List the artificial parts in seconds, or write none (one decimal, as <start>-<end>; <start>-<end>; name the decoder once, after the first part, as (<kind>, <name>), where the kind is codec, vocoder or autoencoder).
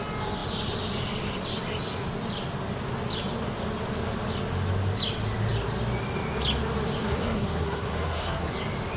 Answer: 7.0-8.5 (codec, SNAC)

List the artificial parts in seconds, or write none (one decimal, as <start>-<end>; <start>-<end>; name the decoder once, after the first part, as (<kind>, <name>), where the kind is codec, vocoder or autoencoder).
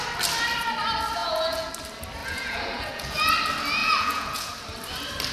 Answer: 1.2-1.7 (vocoder, Vocos); 2.2-3.2; 3.8-4.5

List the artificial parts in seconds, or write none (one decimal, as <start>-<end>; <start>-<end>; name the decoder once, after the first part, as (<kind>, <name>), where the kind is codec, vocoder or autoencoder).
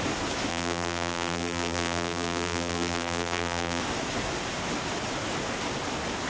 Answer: 0.5-3.8 (vocoder, BigVGAN v2)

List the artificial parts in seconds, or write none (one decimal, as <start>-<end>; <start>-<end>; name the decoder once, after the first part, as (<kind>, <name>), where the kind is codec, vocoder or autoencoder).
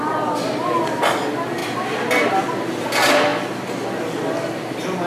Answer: none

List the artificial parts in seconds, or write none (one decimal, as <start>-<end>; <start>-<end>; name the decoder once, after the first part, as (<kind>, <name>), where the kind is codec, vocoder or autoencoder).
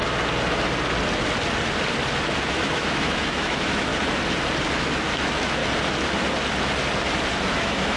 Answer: 2.4-3.9 (autoencoder, DAC-VAE); 4.7-5.6; 7.5-8.0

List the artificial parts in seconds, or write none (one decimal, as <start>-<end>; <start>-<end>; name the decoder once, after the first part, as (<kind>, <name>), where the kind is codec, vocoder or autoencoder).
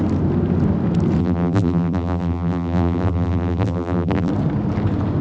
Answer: 1.2-4.3 (vocoder, BigVGAN v2)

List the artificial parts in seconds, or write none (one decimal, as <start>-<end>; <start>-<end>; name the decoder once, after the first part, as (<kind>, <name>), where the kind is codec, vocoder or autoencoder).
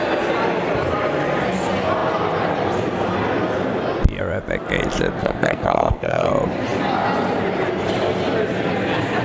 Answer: 5.2-6.3 (codec, SNAC)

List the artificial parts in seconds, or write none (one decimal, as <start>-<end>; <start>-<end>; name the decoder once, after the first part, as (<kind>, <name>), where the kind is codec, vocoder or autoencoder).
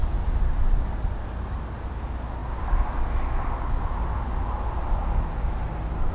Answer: none